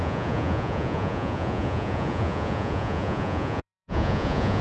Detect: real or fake fake